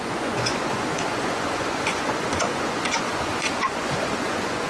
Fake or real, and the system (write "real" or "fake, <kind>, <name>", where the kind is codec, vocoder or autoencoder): fake, vocoder, Vocos